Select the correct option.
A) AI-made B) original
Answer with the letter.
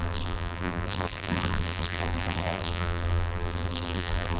A